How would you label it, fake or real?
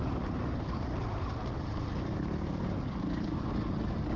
real